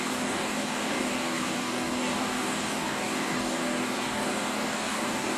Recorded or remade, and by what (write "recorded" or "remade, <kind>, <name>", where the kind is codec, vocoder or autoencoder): remade, codec, DAC